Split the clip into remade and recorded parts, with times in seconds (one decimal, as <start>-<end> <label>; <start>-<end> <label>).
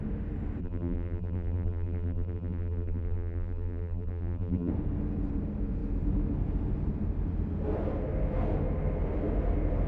0.0-0.6 recorded; 0.6-4.7 remade; 4.7-9.9 recorded